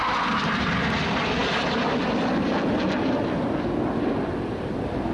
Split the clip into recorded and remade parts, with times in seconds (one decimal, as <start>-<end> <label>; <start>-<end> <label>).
0.0-5.1 recorded